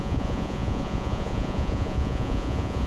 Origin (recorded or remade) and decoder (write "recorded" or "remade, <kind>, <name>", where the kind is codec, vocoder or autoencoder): remade, vocoder, Vocos